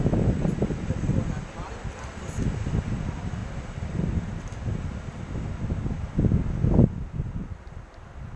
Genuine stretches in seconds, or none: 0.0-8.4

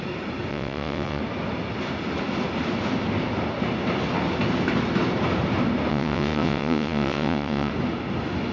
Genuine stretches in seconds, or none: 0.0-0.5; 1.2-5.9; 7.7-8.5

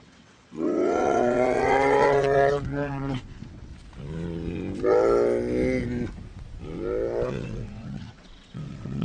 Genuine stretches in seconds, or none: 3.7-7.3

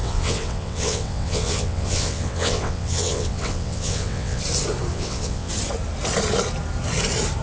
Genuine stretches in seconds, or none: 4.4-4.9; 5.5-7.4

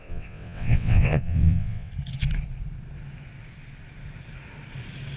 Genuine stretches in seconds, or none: 1.9-5.2

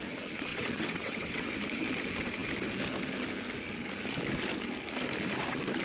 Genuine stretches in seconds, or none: 0.0-0.5; 1.5-5.8